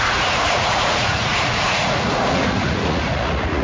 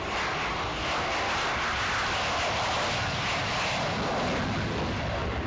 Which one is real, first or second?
second